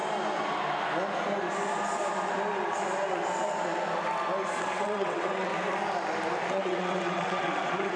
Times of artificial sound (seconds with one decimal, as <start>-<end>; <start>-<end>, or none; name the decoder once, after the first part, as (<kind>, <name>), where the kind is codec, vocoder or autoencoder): 4.6-5.5 (vocoder, WaveNeXt); 6.5-8.0